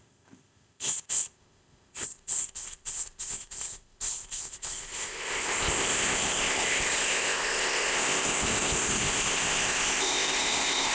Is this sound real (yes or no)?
no